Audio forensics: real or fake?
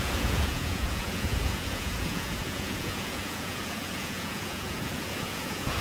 fake